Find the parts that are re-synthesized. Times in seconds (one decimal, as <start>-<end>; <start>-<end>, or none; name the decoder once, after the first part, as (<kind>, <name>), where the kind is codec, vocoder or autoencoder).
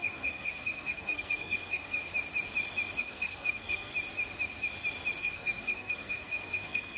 0.0-2.0 (codec, SNAC); 3.0-3.9; 5.2-7.0